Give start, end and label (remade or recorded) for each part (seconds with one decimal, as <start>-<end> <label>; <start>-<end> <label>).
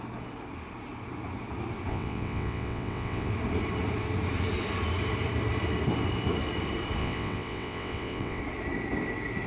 0.0-1.9 recorded; 1.9-3.3 remade; 3.3-7.0 recorded; 7.0-8.4 remade; 8.4-9.5 recorded